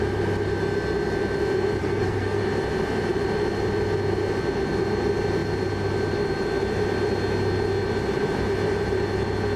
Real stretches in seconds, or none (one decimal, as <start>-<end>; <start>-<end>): 0.0-1.8; 2.4-9.6